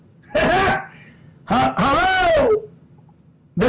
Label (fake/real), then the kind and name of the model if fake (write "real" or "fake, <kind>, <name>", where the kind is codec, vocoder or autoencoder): real